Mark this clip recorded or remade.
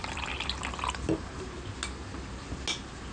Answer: recorded